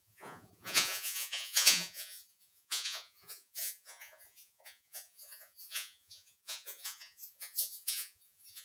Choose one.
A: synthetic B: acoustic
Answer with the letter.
A